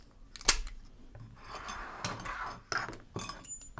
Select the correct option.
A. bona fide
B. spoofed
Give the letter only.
A